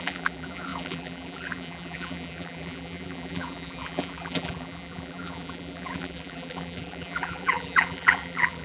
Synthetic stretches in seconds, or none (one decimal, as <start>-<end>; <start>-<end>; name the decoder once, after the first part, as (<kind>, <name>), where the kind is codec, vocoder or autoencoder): 0.0-8.6 (vocoder, BigVGAN v2)